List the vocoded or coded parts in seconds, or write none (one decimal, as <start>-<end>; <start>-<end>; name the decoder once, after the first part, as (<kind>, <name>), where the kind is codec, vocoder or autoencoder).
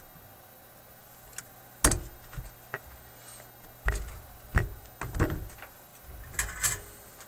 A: none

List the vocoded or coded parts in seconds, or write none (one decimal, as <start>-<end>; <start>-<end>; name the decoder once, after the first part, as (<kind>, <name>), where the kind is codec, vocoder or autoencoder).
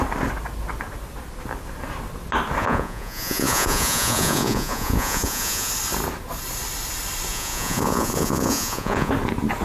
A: 2.6-5.7 (vocoder, Vocos); 7.3-9.1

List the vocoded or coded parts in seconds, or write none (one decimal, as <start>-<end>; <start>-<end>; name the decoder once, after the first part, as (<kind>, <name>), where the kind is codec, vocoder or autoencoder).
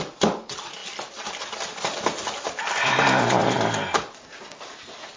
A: none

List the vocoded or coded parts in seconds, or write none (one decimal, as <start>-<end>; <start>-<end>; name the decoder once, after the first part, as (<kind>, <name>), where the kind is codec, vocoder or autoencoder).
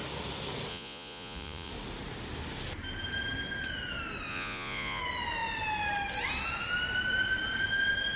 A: 0.7-1.7 (vocoder, Vocos); 4.3-5.0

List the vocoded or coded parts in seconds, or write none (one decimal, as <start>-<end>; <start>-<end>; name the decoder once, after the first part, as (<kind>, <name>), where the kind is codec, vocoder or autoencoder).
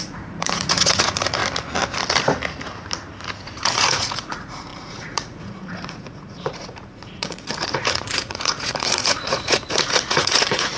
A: 0.0-1.4 (vocoder, Vocos); 3.4-10.8